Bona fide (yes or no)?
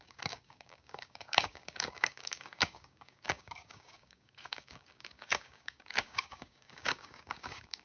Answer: no